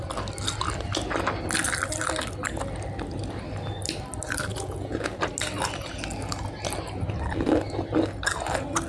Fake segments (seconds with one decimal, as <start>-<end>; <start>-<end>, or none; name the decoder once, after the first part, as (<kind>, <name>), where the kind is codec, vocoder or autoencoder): 4.5-5.3 (vocoder, Vocos)